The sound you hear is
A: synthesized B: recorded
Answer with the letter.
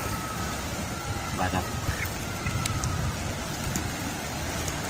B